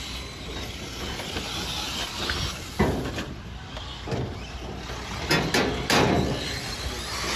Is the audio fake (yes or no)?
no